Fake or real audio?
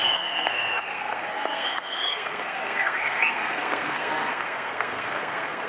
fake